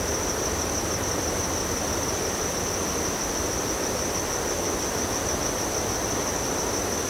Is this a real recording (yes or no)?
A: yes